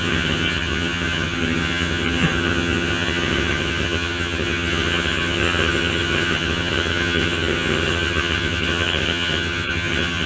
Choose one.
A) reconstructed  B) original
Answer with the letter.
A